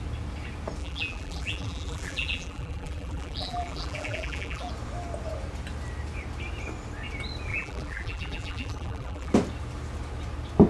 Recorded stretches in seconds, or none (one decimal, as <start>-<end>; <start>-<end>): 0.0-0.8; 4.7-7.5; 9.3-10.7